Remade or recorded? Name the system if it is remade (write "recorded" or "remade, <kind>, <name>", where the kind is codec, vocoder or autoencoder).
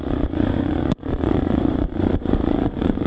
remade, vocoder, Vocos